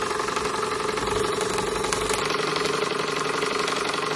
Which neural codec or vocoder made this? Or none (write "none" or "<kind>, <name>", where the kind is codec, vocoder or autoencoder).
none